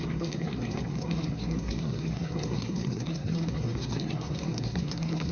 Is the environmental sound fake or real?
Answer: fake